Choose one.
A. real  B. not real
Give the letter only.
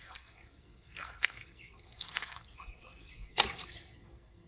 B